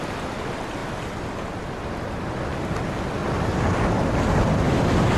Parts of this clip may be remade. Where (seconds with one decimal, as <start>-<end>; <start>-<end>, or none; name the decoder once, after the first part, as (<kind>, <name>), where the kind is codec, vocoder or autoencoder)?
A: 3.2-4.4 (vocoder, BigVGAN v2)